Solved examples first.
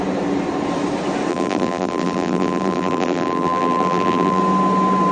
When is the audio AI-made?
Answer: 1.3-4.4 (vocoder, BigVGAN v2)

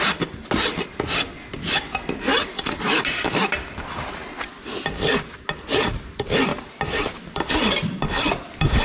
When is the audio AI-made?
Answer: 0.0-4.2 (vocoder, BigVGAN v2); 5.8-6.5; 7.1-8.8

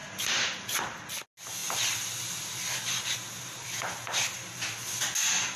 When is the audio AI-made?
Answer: none

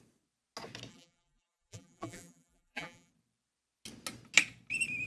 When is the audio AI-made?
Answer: 0.9-3.1 (vocoder, BigVGAN v2)

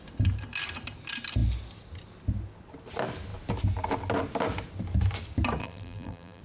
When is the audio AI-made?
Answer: 5.6-6.4 (vocoder, BigVGAN v2)

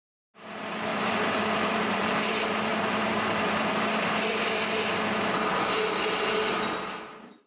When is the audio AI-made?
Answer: 0.9-2.1 (vocoder, BigVGAN v2); 2.7-3.6